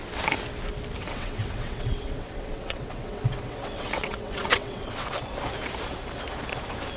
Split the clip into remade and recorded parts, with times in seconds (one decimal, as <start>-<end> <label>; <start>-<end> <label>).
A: 0.0-1.0 recorded; 1.0-5.2 remade; 5.2-7.0 recorded